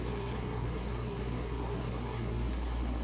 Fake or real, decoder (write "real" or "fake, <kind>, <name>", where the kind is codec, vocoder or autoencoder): fake, codec, SNAC